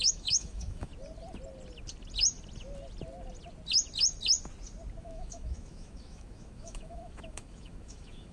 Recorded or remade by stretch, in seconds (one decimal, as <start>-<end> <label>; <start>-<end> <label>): 0.0-0.9 remade; 0.9-5.0 recorded; 5.0-8.3 remade